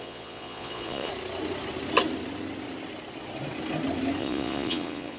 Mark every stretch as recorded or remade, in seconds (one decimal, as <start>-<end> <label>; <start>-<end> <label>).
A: 0.0-1.1 remade; 1.1-4.2 recorded; 4.2-5.2 remade